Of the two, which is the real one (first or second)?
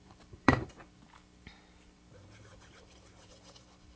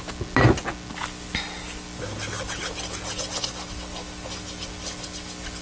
second